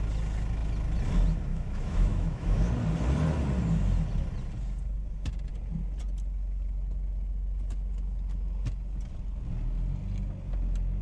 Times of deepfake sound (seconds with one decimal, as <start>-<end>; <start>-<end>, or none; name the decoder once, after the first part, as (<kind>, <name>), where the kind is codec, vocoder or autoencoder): 1.5-2.7 (autoencoder, DAC-VAE)